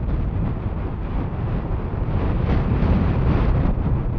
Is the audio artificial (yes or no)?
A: no